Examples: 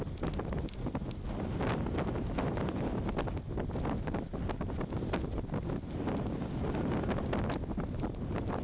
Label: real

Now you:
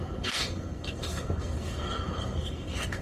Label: fake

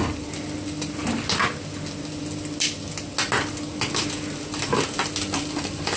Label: real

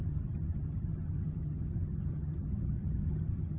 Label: fake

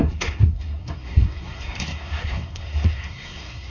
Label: fake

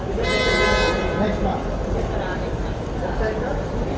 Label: fake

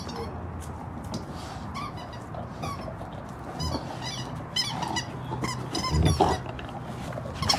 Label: real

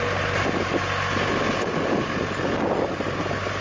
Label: real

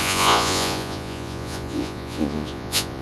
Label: fake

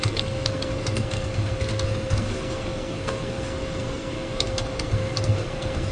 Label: fake